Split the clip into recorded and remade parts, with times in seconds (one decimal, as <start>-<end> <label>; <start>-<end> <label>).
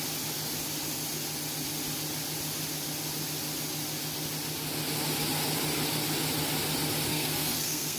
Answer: 0.0-7.1 recorded; 7.1-8.0 remade